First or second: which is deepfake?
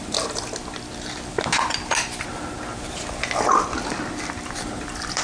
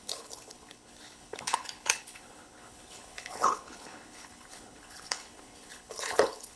second